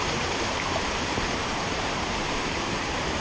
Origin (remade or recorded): remade